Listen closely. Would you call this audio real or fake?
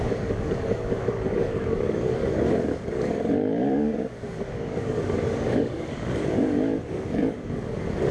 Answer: fake